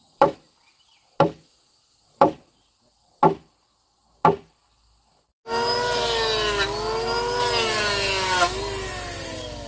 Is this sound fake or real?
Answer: real